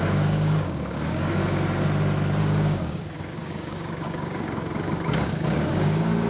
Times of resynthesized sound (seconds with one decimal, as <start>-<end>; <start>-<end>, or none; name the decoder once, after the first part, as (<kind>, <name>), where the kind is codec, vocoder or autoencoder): 0.0-1.4 (codec, DAC); 2.4-6.3